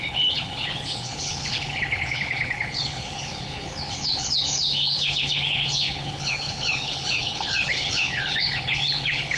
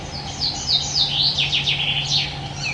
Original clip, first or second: second